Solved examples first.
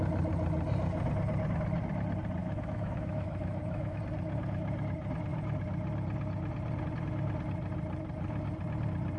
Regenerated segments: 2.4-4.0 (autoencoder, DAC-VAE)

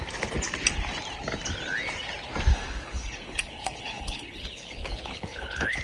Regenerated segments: 2.5-5.8 (codec, HILCodec)